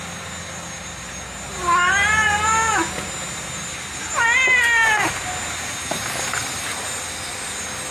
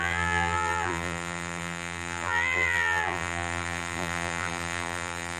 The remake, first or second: second